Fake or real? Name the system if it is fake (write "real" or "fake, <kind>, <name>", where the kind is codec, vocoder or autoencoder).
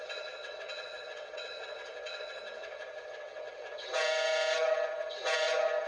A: fake, vocoder, WaveNeXt